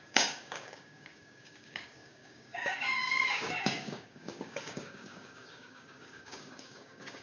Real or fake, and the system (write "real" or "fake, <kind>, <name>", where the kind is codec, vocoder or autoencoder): fake, codec, DAC